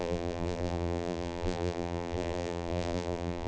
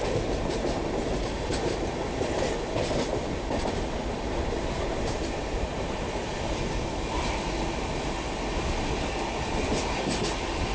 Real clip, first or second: second